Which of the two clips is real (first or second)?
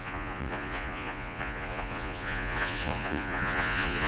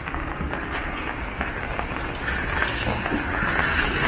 second